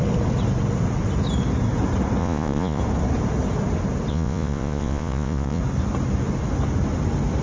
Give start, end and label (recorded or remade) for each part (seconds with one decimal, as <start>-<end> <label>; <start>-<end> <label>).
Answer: 0.0-2.2 recorded; 2.2-2.8 remade; 2.8-4.1 recorded; 4.1-5.6 remade; 5.6-7.4 recorded